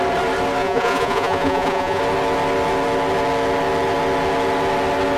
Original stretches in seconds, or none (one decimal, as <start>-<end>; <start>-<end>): 0.0-0.6; 2.0-5.2